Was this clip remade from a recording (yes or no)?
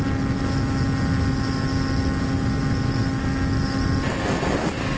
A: no